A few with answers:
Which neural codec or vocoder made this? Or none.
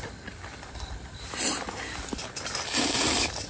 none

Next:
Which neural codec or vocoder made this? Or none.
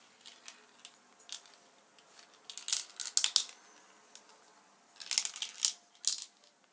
none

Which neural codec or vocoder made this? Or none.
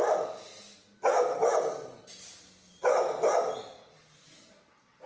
none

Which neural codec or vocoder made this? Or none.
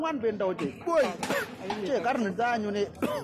none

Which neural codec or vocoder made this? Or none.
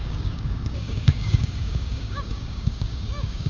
codec, DAC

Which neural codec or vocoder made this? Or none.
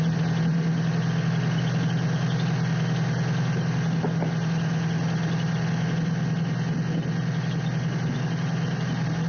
none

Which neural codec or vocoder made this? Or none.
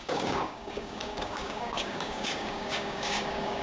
codec, DAC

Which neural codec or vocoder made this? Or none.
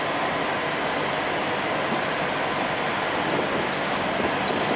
none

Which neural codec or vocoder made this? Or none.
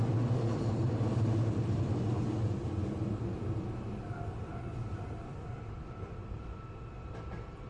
none